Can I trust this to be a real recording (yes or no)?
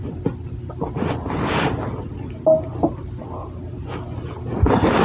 yes